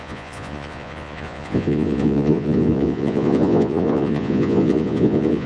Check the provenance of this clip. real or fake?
fake